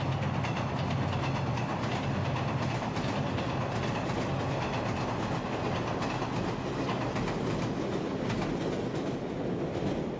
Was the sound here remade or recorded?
recorded